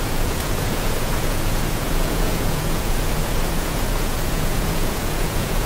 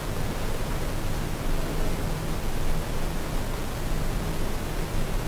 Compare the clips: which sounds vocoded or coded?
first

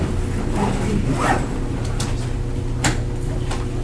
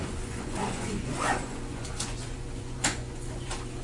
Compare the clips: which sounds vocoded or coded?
second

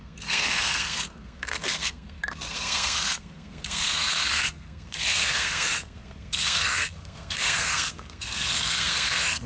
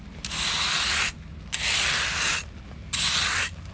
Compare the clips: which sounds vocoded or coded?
first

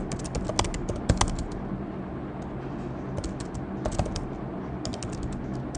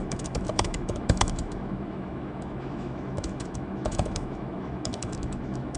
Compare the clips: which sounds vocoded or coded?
second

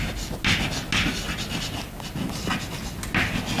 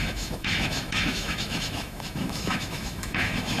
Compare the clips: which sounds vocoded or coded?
second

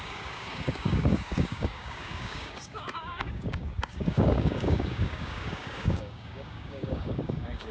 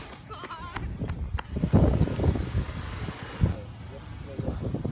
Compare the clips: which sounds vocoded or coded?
first